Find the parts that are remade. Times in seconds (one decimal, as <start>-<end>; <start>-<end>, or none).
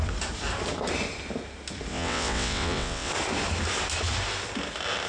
1.9-3.1